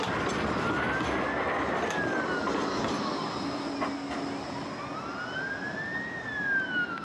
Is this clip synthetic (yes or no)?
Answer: no